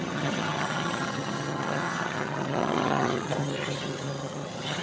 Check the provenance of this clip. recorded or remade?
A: remade